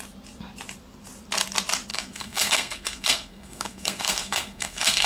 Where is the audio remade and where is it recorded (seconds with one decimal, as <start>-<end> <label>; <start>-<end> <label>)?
0.0-1.9 recorded; 1.9-5.1 remade